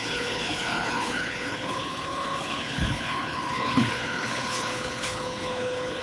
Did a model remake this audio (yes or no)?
yes